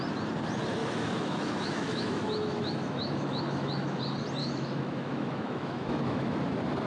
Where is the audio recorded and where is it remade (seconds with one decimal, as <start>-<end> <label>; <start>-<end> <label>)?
0.0-0.8 recorded; 0.8-4.0 remade; 4.0-4.4 recorded; 4.4-6.4 remade; 6.4-6.9 recorded